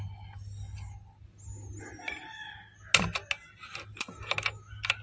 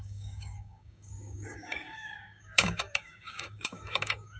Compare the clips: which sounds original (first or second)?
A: first